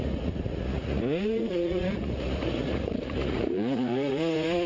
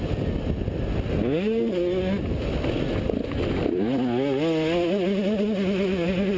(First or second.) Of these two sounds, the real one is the second